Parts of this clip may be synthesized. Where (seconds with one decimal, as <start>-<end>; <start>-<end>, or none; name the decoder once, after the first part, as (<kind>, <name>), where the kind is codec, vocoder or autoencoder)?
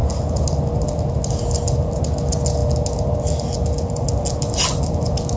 none